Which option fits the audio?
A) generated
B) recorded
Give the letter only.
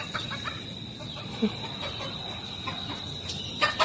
A